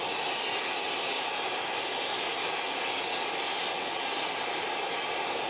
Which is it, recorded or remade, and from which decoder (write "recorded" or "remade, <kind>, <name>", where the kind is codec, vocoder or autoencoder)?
recorded